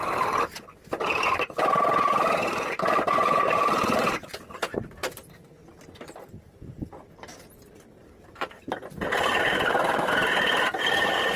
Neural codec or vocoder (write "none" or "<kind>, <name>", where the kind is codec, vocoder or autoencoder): vocoder, BigVGAN v2